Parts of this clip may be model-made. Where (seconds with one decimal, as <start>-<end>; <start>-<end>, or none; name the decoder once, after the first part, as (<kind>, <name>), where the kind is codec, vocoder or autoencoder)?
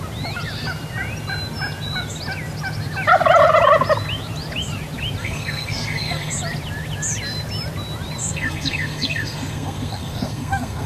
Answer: 5.2-6.3 (codec, SNAC); 8.2-10.9